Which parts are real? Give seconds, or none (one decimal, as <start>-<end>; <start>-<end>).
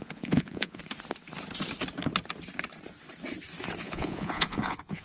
0.8-3.8